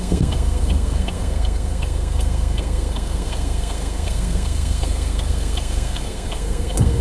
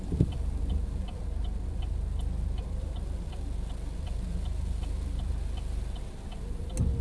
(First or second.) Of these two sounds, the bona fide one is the second